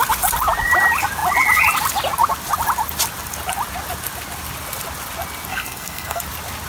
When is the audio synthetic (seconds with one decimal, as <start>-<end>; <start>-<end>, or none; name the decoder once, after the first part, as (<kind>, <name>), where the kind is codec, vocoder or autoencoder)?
5.5-6.2 (codec, SNAC)